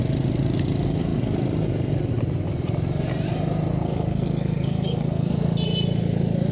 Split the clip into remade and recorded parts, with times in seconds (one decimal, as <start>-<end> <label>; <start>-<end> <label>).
0.0-3.7 recorded; 3.7-5.3 remade; 5.3-6.5 recorded